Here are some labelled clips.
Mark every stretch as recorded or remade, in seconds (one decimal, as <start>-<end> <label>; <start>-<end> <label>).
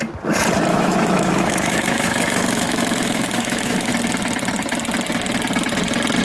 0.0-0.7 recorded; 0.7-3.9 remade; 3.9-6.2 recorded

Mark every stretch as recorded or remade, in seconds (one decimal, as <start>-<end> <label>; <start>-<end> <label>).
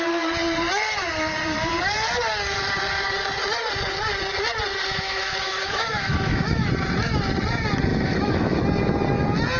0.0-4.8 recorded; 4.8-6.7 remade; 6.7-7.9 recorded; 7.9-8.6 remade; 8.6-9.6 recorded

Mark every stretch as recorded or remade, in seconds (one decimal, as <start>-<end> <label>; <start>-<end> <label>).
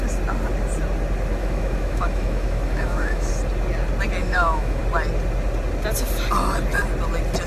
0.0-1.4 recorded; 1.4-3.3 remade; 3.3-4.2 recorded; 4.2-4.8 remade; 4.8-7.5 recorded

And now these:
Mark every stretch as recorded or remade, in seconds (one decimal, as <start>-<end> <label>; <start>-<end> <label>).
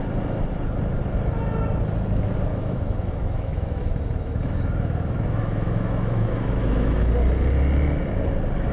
0.0-2.5 recorded; 2.5-7.1 remade; 7.1-8.7 recorded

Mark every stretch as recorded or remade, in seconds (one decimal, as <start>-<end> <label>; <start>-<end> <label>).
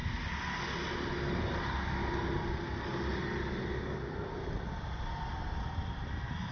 0.0-6.5 recorded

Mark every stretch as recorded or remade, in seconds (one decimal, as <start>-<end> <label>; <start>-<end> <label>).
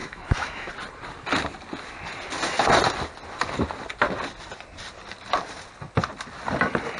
0.0-0.7 remade; 0.7-7.0 recorded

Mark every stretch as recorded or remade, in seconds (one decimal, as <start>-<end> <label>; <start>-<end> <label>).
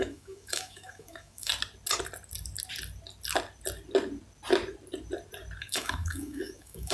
0.0-1.5 remade; 1.5-5.6 recorded; 5.6-6.9 remade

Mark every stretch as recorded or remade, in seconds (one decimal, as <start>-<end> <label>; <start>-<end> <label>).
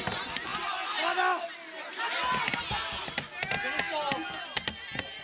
0.0-5.2 recorded